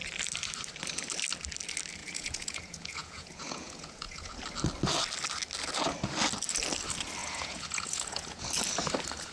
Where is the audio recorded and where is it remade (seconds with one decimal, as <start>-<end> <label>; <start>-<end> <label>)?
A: 0.0-2.0 recorded; 2.0-4.4 remade; 4.4-7.2 recorded; 7.2-8.4 remade; 8.4-9.3 recorded